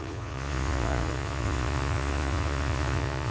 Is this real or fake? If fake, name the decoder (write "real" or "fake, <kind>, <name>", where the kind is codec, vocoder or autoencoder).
fake, vocoder, Vocos